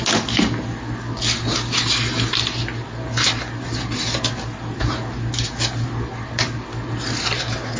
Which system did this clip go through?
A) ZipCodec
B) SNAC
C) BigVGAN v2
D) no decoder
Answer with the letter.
D